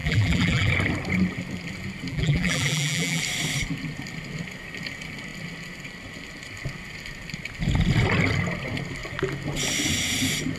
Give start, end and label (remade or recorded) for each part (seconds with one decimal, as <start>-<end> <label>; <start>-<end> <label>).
0.0-0.7 remade; 0.7-2.1 recorded; 2.1-3.2 remade; 3.2-10.6 recorded